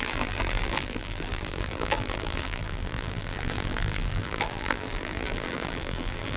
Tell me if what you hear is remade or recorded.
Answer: remade